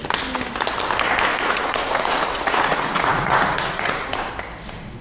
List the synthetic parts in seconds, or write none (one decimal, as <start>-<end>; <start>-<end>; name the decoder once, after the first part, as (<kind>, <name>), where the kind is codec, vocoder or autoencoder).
1.3-4.3 (vocoder, Vocos)